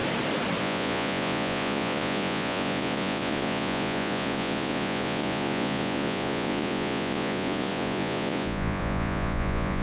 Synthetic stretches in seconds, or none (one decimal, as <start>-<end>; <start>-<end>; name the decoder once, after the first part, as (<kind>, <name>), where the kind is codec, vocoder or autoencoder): 0.6-9.8 (vocoder, Vocos)